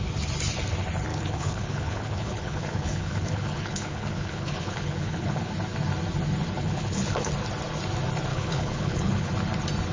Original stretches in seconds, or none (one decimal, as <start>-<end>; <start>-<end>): 0.0-1.1; 5.5-6.6; 7.3-8.3; 9.3-9.9